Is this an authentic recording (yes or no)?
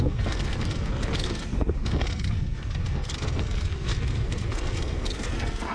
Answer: no